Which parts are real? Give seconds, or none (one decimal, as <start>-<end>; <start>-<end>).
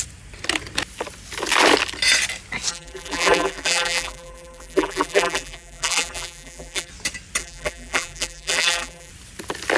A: 0.0-2.7; 6.9-7.4; 9.1-9.8